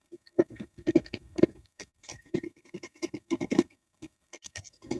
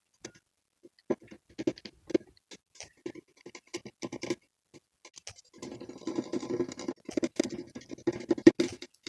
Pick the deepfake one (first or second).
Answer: first